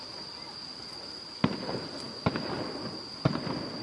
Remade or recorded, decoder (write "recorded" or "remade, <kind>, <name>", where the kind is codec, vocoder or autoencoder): recorded